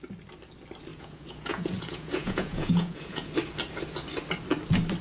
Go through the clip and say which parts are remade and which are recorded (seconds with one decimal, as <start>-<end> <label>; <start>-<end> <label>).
0.0-0.9 recorded; 0.9-3.3 remade; 3.3-5.0 recorded